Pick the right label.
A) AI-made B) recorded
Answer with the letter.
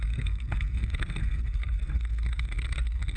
A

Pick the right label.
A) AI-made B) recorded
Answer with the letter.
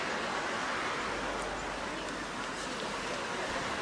B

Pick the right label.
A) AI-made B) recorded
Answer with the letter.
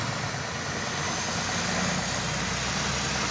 B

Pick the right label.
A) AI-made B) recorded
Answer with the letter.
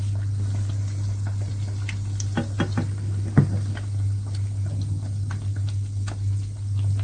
B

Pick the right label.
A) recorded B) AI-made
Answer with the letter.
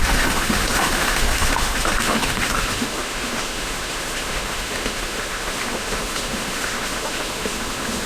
B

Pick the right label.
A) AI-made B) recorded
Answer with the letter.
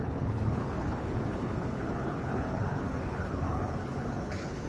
A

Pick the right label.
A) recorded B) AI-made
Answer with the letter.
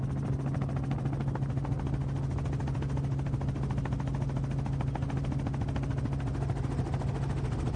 A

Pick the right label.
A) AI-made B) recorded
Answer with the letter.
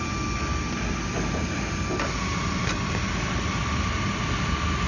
B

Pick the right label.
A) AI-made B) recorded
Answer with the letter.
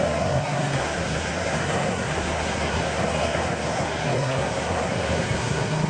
A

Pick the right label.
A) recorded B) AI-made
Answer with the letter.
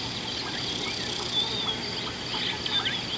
A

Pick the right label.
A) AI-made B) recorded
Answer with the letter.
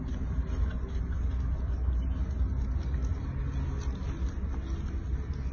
B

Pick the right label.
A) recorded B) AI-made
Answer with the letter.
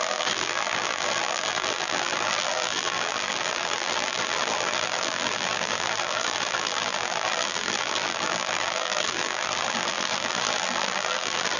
B